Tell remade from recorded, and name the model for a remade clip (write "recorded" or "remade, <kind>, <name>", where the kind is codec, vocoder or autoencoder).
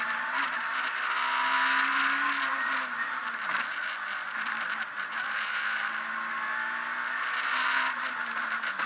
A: recorded